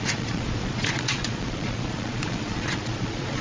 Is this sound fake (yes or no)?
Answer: yes